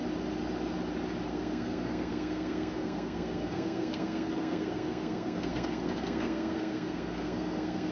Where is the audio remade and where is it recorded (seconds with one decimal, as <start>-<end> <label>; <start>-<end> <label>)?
0.0-1.3 recorded; 1.3-7.9 remade